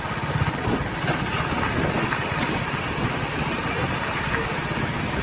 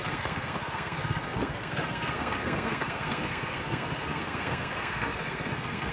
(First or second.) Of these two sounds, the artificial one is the second